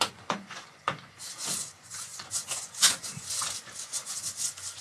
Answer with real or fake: fake